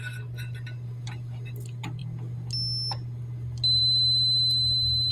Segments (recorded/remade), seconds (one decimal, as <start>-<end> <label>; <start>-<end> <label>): 0.0-5.1 recorded